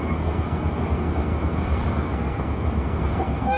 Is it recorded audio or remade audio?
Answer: remade